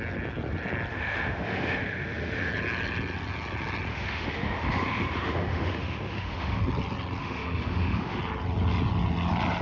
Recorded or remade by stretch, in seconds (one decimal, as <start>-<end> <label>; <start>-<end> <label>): 0.0-0.9 recorded; 0.9-2.5 remade; 2.5-3.9 recorded; 3.9-6.6 remade; 6.6-7.2 recorded; 7.2-8.2 remade; 8.2-9.6 recorded